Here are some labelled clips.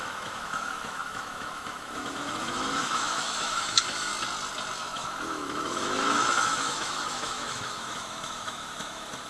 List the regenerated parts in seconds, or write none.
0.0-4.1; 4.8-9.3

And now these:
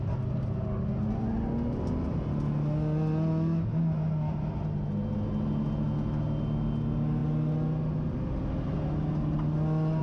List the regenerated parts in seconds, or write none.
none